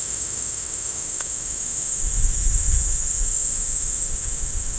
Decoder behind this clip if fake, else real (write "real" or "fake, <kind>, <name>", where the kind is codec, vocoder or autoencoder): fake, autoencoder, DAC-VAE